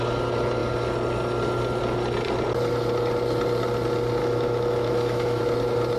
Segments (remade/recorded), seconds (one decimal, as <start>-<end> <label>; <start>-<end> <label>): 0.0-4.2 recorded; 4.2-5.4 remade; 5.4-6.0 recorded